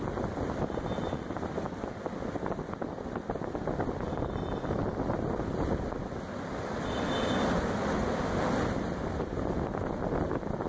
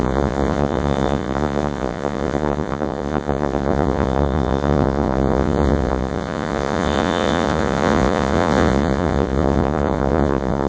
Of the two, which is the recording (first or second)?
first